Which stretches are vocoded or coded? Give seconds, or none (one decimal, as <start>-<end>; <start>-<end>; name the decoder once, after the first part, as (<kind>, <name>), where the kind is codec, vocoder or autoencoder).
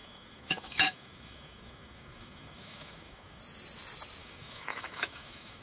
0.0-3.4 (autoencoder, DAC-VAE); 4.2-5.6